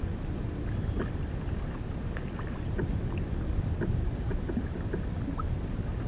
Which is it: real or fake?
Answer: real